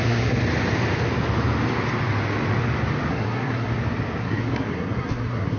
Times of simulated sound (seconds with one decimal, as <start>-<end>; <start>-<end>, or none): 0.0-0.4; 3.1-3.7; 4.2-5.6